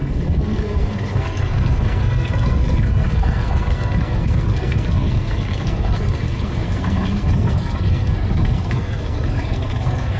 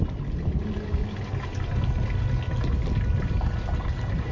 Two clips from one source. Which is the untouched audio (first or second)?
second